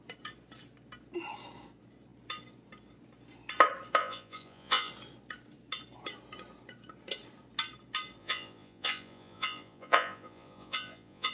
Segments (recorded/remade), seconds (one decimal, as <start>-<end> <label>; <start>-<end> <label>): 0.0-4.0 recorded; 4.0-4.9 remade; 4.9-8.2 recorded; 8.2-11.3 remade